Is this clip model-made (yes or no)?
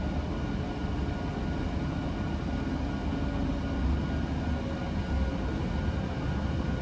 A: no